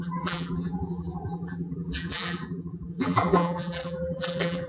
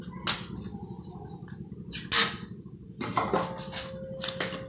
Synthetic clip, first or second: first